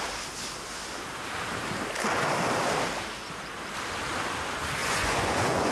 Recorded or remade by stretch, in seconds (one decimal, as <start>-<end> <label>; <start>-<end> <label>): 0.0-4.8 recorded; 4.8-5.7 remade